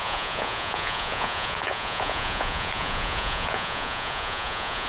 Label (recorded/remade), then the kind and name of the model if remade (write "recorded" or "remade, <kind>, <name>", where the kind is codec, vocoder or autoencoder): remade, vocoder, Vocos